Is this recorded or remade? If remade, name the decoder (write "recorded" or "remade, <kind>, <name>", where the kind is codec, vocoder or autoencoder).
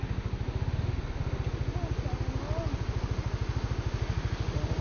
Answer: recorded